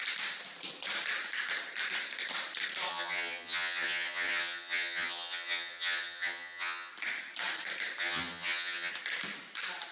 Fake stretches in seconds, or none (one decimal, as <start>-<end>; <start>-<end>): 2.9-6.9; 8.0-8.9

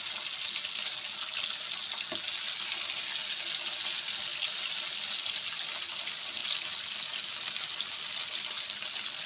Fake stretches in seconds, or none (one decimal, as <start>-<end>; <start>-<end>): none

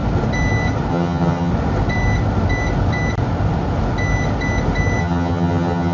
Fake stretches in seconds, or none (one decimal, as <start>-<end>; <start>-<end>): 0.9-1.5; 5.0-5.9

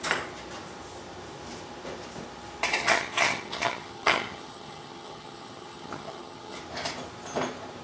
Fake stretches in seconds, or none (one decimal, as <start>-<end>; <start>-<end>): 2.8-6.6

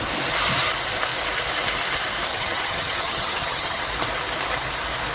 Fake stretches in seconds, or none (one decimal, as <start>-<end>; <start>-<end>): 2.3-3.8